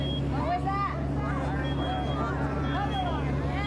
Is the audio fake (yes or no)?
no